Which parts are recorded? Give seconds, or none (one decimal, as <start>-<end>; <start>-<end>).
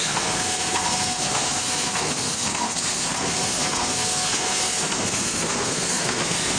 none